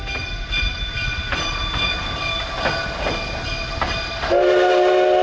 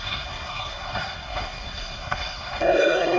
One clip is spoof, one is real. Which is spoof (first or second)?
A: second